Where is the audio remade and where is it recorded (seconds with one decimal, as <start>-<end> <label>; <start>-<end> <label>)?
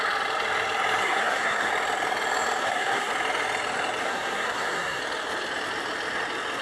0.0-1.0 recorded; 1.0-1.7 remade; 1.7-2.6 recorded; 2.6-3.1 remade; 3.1-4.0 recorded; 4.0-5.0 remade; 5.0-6.6 recorded